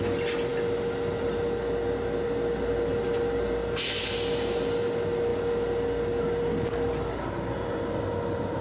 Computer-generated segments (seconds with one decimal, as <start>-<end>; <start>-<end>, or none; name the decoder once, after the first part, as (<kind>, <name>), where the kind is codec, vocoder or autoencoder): none